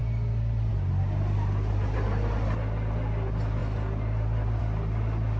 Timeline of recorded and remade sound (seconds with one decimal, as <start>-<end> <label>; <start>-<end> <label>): 0.0-5.4 recorded

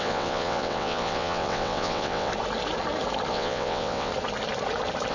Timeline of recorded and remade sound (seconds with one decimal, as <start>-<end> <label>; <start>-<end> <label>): 0.0-2.3 remade; 2.3-3.3 recorded; 3.3-4.1 remade; 4.1-5.1 recorded

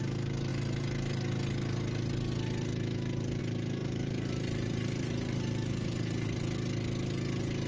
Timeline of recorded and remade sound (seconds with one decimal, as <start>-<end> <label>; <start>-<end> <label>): 0.0-3.8 recorded; 3.8-6.4 remade; 6.4-7.7 recorded